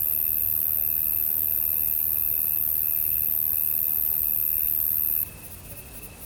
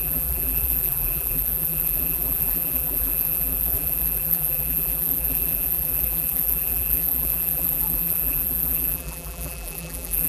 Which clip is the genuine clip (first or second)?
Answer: first